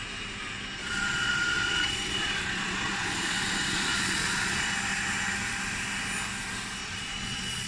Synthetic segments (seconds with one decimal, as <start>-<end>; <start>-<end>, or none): 0.8-4.7; 6.8-7.7